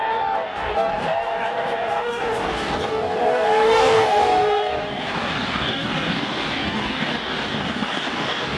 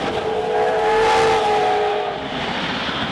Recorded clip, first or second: second